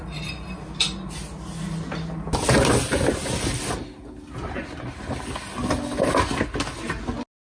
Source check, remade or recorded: recorded